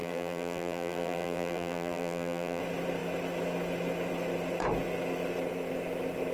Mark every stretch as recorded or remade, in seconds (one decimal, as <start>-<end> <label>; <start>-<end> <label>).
0.0-2.6 remade; 2.6-6.3 recorded

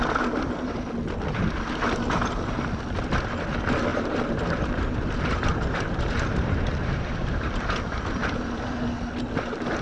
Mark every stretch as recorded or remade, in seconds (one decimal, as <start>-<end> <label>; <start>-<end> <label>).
0.0-3.9 recorded; 3.9-8.0 remade; 8.0-9.8 recorded

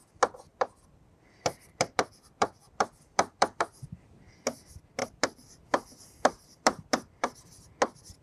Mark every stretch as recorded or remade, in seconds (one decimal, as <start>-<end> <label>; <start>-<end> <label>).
0.0-0.5 recorded; 0.5-3.9 remade; 3.9-5.0 recorded; 5.0-7.7 remade; 7.7-8.2 recorded

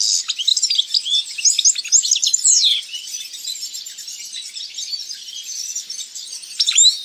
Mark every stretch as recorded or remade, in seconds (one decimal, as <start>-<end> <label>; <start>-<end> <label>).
0.0-7.0 recorded

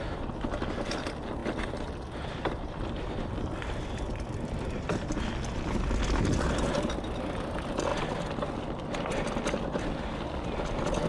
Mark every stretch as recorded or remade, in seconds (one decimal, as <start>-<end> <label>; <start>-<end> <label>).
0.0-1.4 remade; 1.4-2.6 recorded; 2.6-7.9 remade; 7.9-11.1 recorded

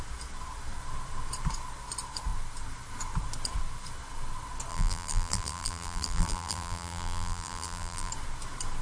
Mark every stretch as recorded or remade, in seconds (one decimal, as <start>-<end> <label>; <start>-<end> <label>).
0.0-4.7 recorded; 4.7-8.1 remade; 8.1-8.8 recorded

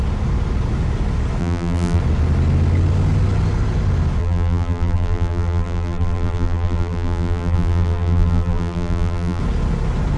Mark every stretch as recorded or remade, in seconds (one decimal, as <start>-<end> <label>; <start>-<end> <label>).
0.0-1.4 recorded; 1.4-2.0 remade; 2.0-4.2 recorded; 4.2-9.4 remade; 9.4-10.2 recorded

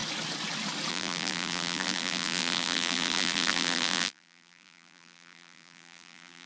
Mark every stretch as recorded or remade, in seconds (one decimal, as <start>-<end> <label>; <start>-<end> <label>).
0.0-0.9 recorded; 0.9-6.5 remade